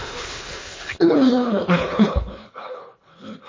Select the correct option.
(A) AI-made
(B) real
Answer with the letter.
A